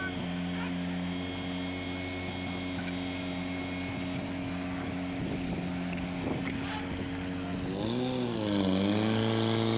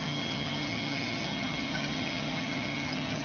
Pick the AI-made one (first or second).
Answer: second